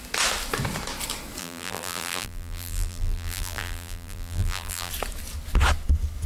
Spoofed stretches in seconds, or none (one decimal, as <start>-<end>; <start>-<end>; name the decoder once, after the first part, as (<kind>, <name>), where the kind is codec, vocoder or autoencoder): 1.4-4.9 (vocoder, BigVGAN v2)